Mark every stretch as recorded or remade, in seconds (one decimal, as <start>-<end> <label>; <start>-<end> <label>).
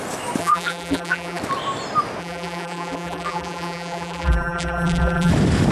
0.0-0.4 recorded; 0.4-1.4 remade; 1.4-2.2 recorded; 2.2-5.3 remade; 5.3-5.7 recorded